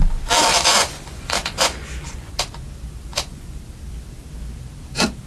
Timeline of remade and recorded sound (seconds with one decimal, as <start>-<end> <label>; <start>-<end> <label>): 0.0-0.5 recorded; 0.5-2.4 remade; 2.4-3.1 recorded; 3.1-3.6 remade; 3.6-5.3 recorded